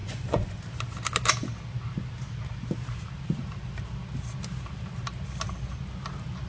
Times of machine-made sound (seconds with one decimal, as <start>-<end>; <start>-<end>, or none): 0.0-0.6